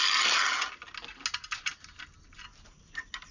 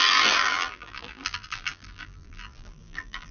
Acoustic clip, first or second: first